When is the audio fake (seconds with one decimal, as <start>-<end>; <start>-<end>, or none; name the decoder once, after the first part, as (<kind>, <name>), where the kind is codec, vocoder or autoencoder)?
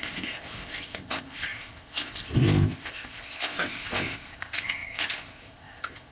0.0-6.1 (codec, ZipCodec)